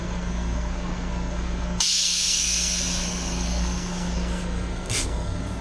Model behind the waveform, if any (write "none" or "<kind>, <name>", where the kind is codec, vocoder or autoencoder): codec, SNAC